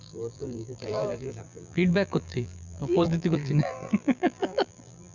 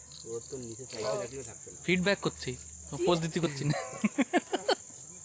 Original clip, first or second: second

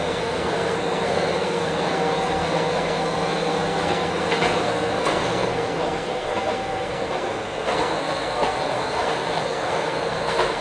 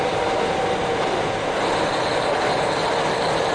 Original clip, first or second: second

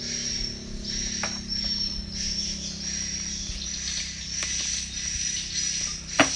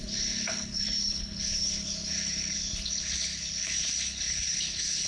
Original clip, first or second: first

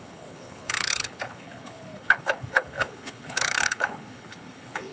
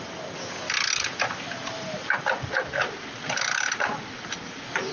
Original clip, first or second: second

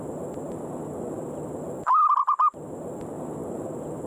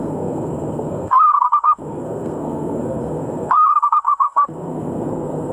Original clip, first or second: first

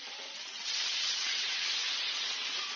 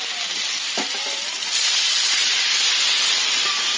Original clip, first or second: second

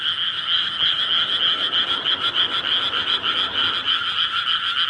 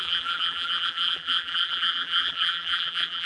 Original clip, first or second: first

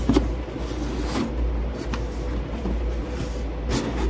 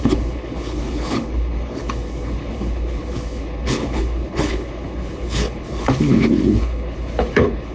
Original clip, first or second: first